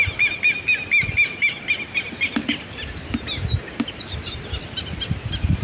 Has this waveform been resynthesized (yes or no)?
no